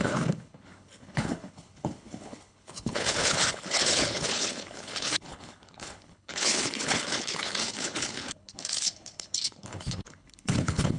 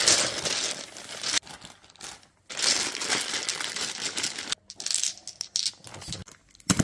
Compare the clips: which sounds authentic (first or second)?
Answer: second